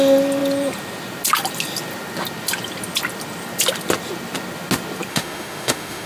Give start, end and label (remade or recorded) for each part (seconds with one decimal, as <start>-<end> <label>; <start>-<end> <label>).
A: 0.0-5.1 recorded; 5.1-6.1 remade